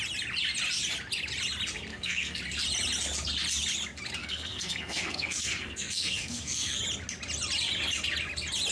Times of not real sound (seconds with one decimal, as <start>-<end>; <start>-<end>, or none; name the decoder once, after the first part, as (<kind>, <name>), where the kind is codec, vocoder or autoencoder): 1.9-2.4 (codec, SNAC); 4.2-6.8